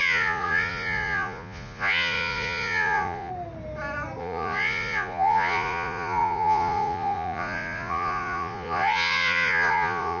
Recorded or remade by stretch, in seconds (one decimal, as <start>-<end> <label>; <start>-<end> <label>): 0.0-3.3 remade; 3.3-4.2 recorded; 4.2-10.2 remade